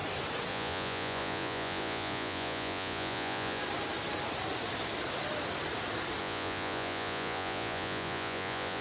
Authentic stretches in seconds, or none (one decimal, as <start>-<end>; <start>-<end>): 0.0-0.5; 3.6-6.2